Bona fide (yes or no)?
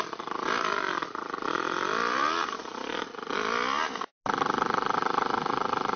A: yes